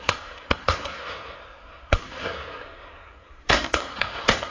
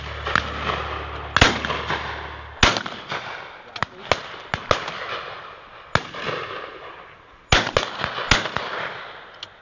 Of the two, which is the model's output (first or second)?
first